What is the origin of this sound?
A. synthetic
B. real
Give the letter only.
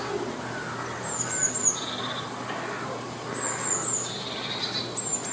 B